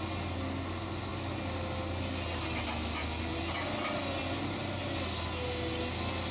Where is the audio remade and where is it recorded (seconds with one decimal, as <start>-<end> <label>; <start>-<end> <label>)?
0.0-6.3 recorded